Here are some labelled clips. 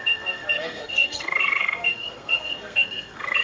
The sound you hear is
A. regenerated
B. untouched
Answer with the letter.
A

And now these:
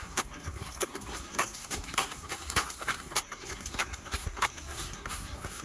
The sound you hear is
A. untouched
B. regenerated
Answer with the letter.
B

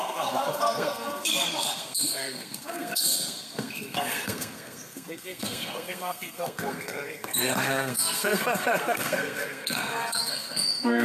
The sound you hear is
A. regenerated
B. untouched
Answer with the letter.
A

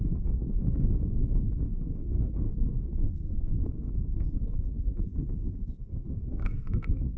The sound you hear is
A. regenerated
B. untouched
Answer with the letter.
A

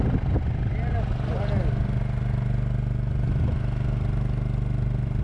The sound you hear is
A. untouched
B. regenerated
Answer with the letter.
A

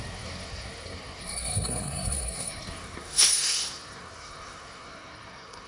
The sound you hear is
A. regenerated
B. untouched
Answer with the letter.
A